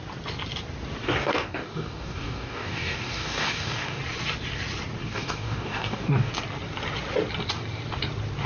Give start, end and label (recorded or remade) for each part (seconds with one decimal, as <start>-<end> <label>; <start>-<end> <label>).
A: 0.0-1.0 recorded; 1.0-4.0 remade; 4.0-5.0 recorded; 5.0-6.3 remade; 6.3-8.5 recorded